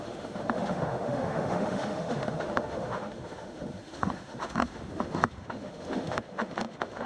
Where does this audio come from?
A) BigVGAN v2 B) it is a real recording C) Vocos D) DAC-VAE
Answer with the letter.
D